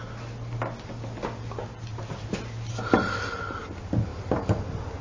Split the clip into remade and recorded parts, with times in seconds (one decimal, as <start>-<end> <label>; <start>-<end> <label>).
0.0-5.0 recorded